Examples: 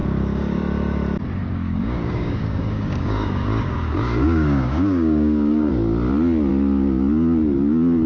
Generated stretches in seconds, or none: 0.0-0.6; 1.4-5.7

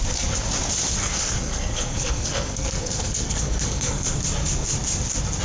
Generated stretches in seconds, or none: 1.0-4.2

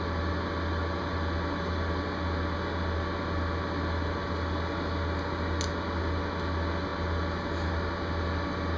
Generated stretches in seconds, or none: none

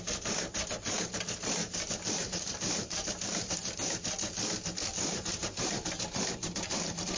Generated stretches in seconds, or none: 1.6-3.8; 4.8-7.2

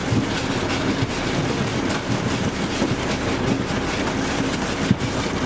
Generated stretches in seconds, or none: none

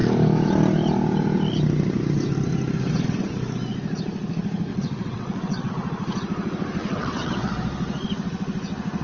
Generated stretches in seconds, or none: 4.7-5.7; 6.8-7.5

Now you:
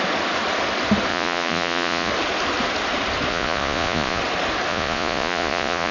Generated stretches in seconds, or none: 1.1-2.1; 3.3-4.2; 4.7-5.9